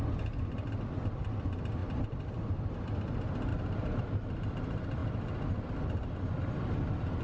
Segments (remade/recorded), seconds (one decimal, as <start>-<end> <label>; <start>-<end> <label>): 0.0-1.8 recorded; 1.8-2.7 remade; 2.7-3.5 recorded; 3.5-4.3 remade; 4.3-7.2 recorded